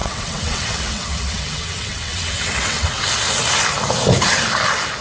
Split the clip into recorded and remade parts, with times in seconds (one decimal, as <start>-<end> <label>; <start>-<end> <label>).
0.0-3.0 remade; 3.0-5.0 recorded